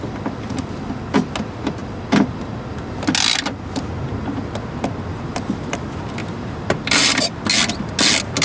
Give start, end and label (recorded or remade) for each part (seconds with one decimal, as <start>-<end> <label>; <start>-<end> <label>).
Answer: 0.0-5.1 recorded; 5.1-5.8 remade; 5.8-6.2 recorded; 6.2-7.4 remade; 7.4-8.4 recorded